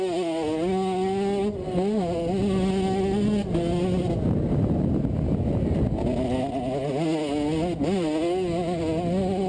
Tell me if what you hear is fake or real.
real